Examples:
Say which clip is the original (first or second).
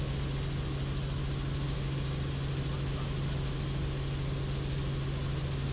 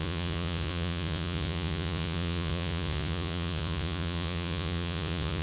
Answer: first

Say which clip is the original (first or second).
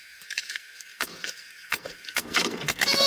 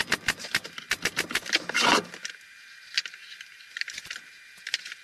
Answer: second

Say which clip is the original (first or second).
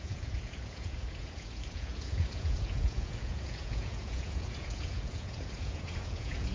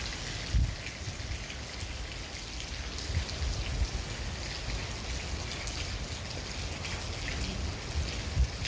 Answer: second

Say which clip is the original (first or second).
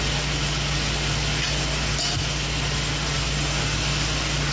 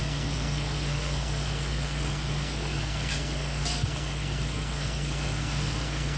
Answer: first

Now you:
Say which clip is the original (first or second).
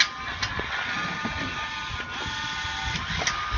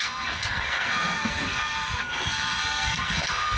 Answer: first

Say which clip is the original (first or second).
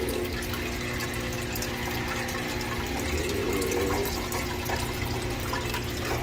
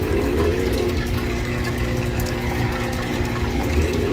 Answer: first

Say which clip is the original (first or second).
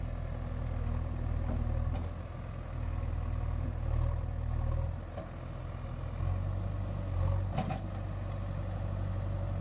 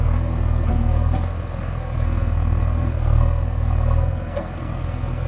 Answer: first